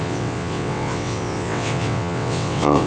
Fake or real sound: fake